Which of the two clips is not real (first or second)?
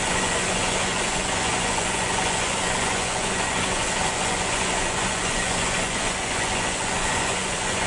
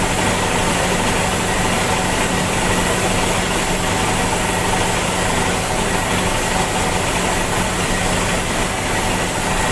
first